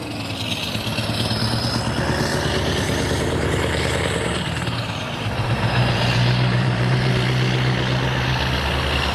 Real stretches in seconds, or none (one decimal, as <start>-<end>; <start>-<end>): 0.0-2.3; 7.1-9.1

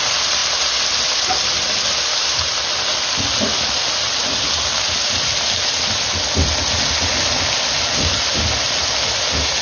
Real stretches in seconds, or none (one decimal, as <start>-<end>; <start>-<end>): 0.0-9.6

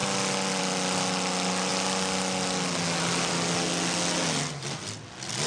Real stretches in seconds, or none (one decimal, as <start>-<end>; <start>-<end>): 0.0-5.5